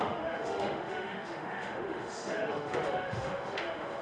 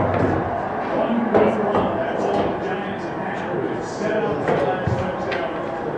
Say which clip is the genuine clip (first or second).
second